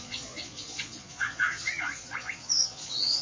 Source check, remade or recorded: remade